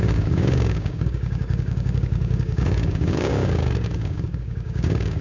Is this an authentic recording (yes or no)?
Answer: no